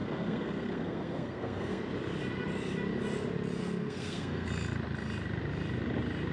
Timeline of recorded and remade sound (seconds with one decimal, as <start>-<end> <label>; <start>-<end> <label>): 0.0-1.8 remade; 1.8-3.6 recorded; 3.6-4.5 remade; 4.5-6.3 recorded